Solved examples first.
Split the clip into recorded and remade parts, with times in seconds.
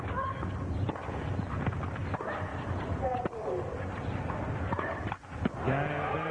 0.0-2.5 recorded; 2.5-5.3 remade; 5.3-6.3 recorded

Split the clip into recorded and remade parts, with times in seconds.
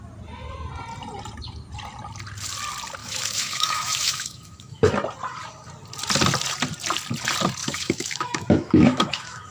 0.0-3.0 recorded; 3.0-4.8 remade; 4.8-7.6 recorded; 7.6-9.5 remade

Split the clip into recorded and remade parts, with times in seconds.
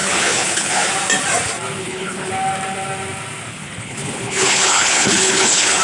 0.0-0.9 remade; 0.9-1.8 recorded; 1.8-2.3 remade; 2.3-3.5 recorded; 3.5-5.8 remade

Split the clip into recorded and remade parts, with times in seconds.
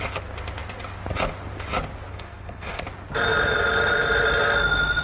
0.0-2.1 recorded; 2.1-2.8 remade; 2.8-5.0 recorded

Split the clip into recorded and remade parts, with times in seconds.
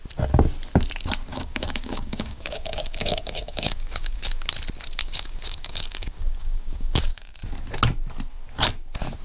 0.0-1.3 recorded; 1.3-4.3 remade; 4.3-5.0 recorded; 5.0-7.4 remade; 7.4-9.2 recorded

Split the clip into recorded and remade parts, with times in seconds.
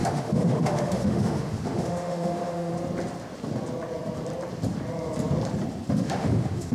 0.0-2.7 remade; 2.7-5.9 recorded; 5.9-6.7 remade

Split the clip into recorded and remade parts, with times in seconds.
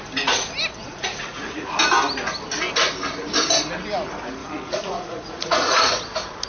0.0-0.8 recorded; 0.8-1.7 remade; 1.7-4.4 recorded; 4.4-6.0 remade; 6.0-6.5 recorded